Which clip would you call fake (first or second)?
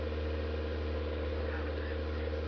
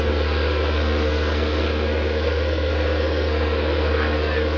second